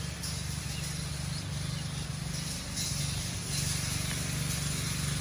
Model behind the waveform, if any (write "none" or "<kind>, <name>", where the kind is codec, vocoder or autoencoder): none